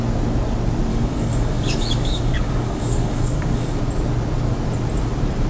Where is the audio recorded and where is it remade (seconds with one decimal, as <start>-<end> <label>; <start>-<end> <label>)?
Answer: 0.0-0.9 recorded; 0.9-3.8 remade; 3.8-5.5 recorded